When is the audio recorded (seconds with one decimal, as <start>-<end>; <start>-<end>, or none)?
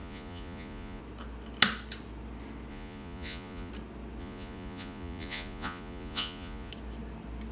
1.0-2.7; 3.7-4.2; 6.7-7.5